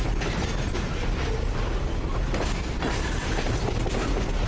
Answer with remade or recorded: recorded